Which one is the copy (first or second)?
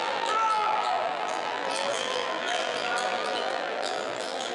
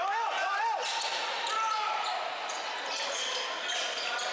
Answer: first